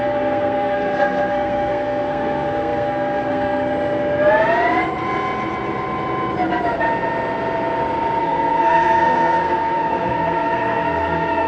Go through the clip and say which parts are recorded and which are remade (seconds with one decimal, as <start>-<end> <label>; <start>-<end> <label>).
0.0-3.7 remade; 3.7-8.2 recorded; 8.2-11.5 remade